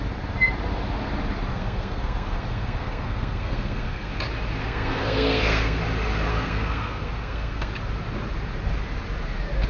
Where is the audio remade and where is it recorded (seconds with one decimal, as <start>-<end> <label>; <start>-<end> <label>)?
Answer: 0.0-1.5 recorded; 1.5-4.1 remade; 4.1-4.6 recorded; 4.6-5.8 remade; 5.8-6.3 recorded; 6.3-7.7 remade; 7.7-9.7 recorded